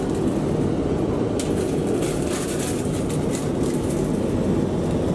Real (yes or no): yes